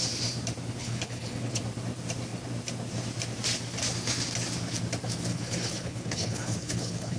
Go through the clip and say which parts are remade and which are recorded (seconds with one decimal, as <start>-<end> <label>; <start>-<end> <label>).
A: 0.0-0.8 recorded; 0.8-1.6 remade; 1.6-5.3 recorded; 5.3-7.2 remade